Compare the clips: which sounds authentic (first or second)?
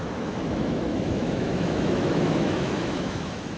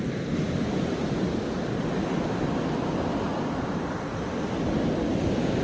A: second